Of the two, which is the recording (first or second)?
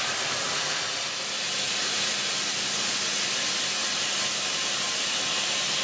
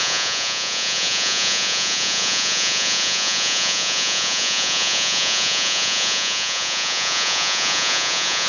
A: first